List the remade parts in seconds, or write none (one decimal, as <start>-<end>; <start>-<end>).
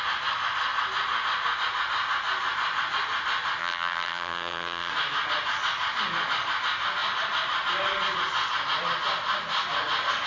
3.6-4.9